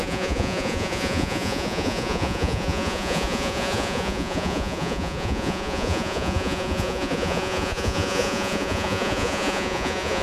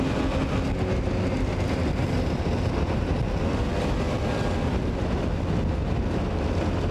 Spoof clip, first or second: first